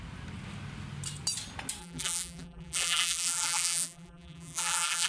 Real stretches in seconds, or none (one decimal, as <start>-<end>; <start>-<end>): 0.0-1.8